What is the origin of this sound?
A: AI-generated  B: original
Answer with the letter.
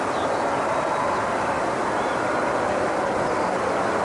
B